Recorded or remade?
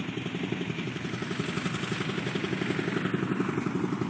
recorded